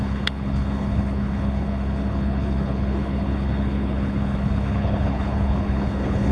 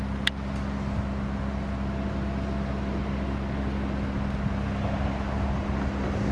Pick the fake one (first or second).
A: first